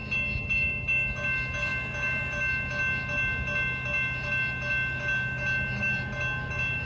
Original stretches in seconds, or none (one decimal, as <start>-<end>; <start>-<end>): 0.0-6.9